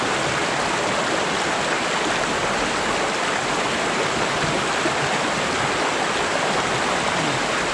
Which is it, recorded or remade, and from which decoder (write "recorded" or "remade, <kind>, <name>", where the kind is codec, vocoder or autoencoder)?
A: recorded